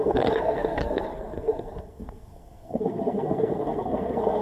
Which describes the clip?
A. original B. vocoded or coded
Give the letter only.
B